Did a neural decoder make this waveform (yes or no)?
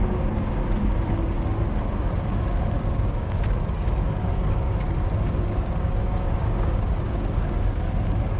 yes